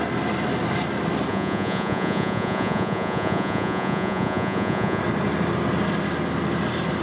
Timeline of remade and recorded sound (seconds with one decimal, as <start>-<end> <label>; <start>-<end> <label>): 0.0-1.3 recorded; 1.3-5.0 remade; 5.0-7.0 recorded